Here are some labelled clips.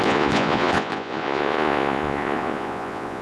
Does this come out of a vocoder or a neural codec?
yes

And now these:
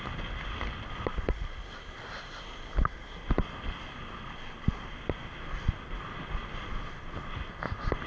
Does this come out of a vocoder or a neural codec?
no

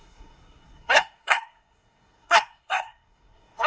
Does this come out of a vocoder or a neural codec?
yes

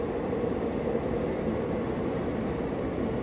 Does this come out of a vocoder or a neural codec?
yes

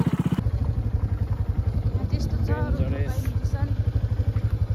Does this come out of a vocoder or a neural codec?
no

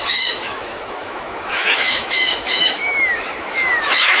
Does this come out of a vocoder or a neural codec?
yes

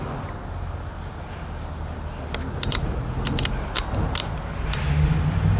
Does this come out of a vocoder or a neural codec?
no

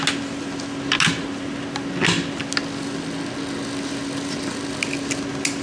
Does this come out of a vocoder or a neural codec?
no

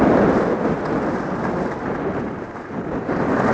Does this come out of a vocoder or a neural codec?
no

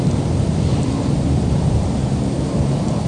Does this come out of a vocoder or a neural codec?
yes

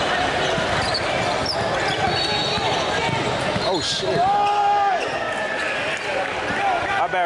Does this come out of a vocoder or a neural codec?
no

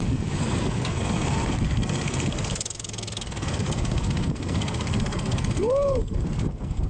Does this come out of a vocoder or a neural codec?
yes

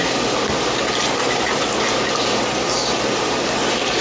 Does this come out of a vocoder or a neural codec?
no